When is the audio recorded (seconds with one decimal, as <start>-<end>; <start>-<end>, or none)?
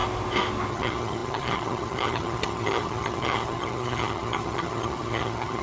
0.0-0.7